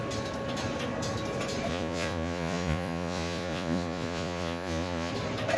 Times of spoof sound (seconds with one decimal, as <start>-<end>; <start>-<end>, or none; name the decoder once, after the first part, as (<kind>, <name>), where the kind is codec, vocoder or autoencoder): 1.7-5.1 (vocoder, Vocos)